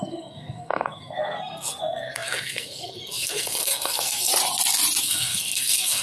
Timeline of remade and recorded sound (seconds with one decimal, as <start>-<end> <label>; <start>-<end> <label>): 0.0-4.3 remade; 4.3-5.0 recorded; 5.0-6.0 remade